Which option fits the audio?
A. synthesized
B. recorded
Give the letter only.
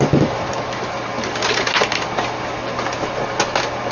B